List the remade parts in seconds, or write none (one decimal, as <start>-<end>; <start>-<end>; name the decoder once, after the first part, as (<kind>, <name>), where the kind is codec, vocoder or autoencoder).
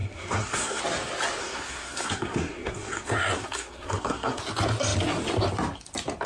0.0-0.8 (codec, SNAC); 1.4-4.4